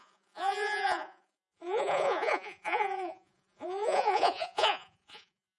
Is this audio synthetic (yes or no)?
yes